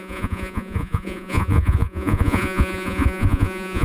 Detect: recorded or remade remade